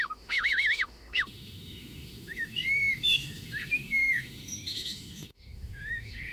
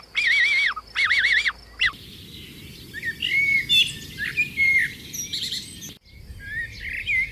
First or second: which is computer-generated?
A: first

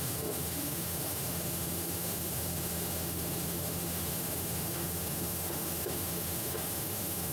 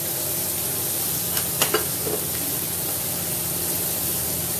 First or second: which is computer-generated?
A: first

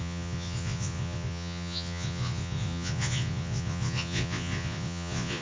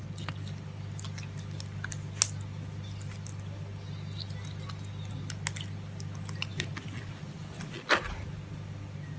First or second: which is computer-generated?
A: first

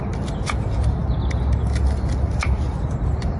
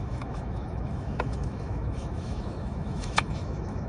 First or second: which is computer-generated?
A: second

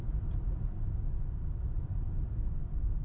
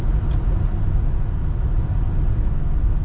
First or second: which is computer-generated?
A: first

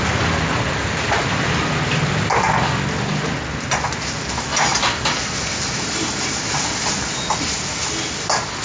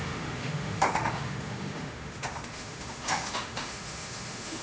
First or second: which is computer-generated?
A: second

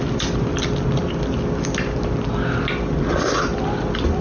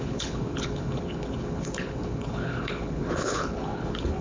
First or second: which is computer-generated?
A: second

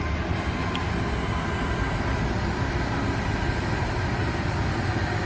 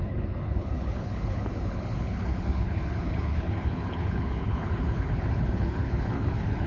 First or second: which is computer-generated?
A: second